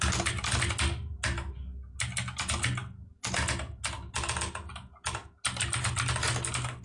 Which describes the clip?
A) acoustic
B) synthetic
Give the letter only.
A